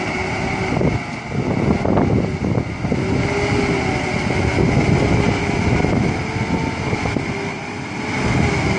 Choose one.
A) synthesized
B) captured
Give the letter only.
B